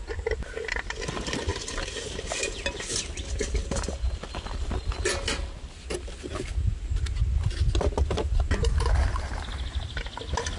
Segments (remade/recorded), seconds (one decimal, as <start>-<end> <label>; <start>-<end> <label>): 0.0-10.6 recorded